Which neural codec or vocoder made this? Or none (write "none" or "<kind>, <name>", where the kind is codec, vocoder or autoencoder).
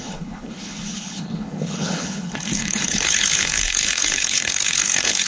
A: codec, HILCodec